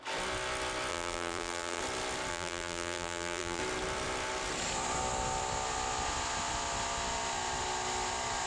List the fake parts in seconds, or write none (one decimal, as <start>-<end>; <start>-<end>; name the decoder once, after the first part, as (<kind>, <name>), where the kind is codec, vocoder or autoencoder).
0.9-1.8 (vocoder, BigVGAN v2); 2.3-3.6